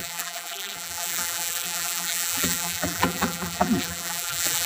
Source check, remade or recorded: remade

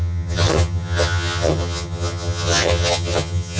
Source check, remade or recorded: remade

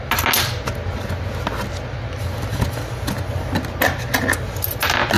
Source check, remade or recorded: recorded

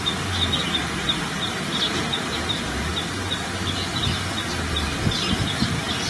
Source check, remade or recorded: recorded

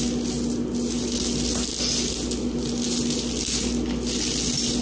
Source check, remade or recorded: recorded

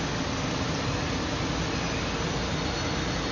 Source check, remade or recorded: recorded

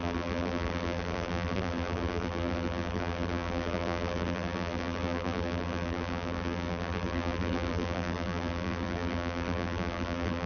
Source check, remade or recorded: remade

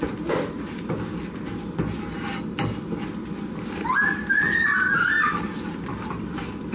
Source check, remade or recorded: recorded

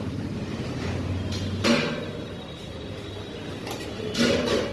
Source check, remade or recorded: recorded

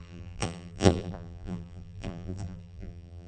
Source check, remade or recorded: remade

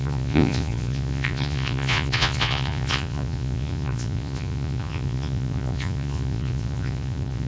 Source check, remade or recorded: remade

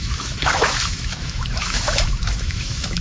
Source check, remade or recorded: remade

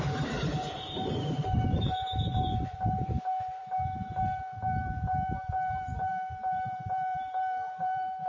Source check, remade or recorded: remade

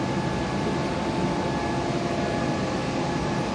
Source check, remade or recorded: recorded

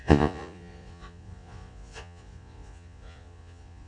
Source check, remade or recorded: remade